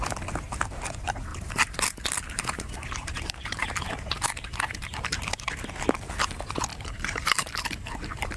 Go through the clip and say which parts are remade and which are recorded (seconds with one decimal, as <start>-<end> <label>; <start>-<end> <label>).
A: 0.0-1.3 recorded; 1.3-5.8 remade; 5.8-6.7 recorded; 6.7-7.5 remade; 7.5-8.4 recorded